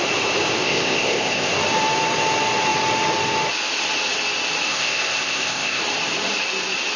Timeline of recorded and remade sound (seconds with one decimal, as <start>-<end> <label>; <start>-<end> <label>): 0.0-0.6 recorded; 0.6-1.5 remade; 1.5-4.7 recorded; 4.7-5.8 remade; 5.8-7.0 recorded